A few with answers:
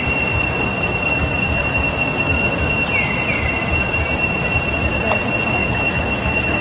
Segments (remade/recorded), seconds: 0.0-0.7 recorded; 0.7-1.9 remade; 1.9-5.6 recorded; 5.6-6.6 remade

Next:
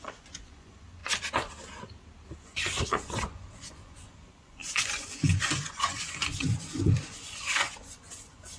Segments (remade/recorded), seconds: 0.0-1.0 remade; 1.0-2.4 recorded; 2.4-8.6 remade